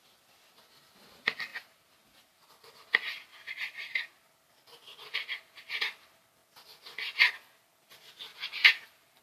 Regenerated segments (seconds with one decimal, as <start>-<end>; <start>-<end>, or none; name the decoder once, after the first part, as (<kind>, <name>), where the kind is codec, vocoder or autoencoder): 1.5-2.5 (vocoder, BigVGAN v2); 3.3-4.0; 8.3-9.2